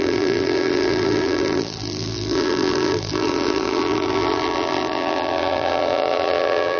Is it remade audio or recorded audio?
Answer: remade